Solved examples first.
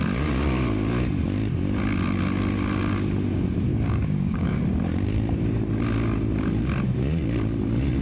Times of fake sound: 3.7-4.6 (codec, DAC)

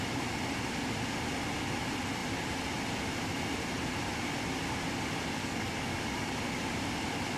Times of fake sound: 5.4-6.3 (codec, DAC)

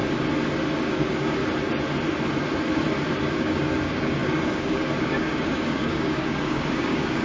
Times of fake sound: 0.8-1.4 (codec, DAC); 3.2-7.2

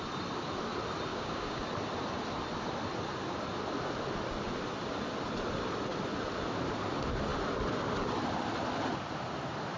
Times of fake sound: 1.1-1.6 (codec, DAC)